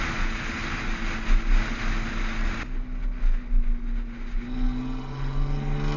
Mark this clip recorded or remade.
recorded